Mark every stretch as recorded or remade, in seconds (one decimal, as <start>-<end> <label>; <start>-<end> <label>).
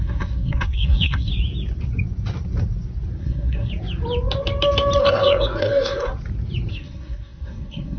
0.0-1.3 remade; 1.3-3.2 recorded; 3.2-3.7 remade; 3.7-5.0 recorded; 5.0-6.1 remade; 6.1-6.7 recorded; 6.7-8.0 remade